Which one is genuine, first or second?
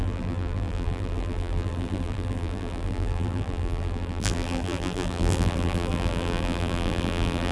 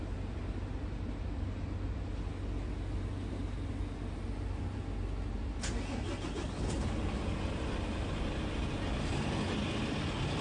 second